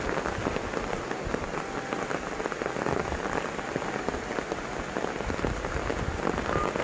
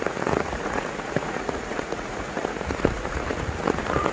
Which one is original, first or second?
first